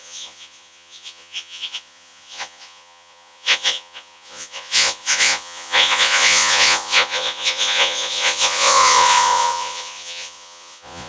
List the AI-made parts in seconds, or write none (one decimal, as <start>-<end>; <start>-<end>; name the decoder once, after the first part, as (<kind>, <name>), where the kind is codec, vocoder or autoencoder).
0.0-11.1 (vocoder, Vocos)